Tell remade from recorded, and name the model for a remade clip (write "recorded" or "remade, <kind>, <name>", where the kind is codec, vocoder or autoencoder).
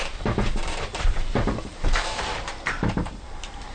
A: remade, vocoder, BigVGAN v2